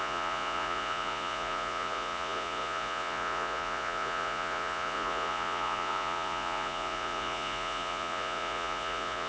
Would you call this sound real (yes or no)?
no